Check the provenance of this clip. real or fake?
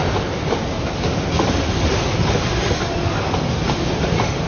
real